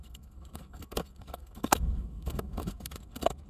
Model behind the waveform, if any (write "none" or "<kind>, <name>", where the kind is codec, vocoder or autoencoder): codec, SNAC